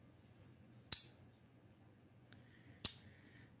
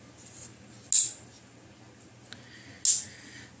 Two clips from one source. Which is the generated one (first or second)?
first